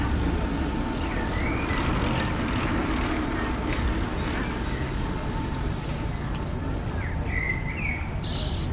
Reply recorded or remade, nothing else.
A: recorded